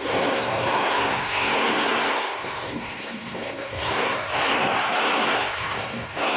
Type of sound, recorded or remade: remade